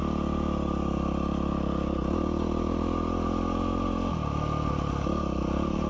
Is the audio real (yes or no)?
yes